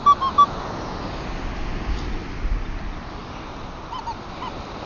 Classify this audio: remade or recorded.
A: recorded